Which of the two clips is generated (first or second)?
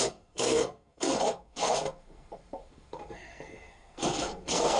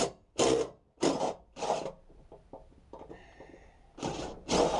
first